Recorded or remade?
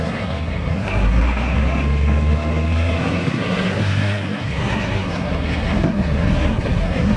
remade